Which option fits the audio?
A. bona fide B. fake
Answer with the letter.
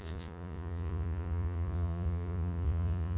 B